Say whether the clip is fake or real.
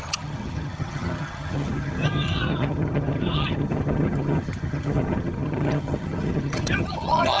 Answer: fake